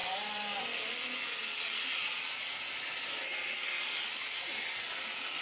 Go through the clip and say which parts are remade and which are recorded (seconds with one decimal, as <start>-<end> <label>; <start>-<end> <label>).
0.0-5.4 recorded